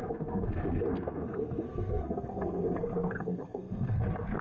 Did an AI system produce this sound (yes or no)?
yes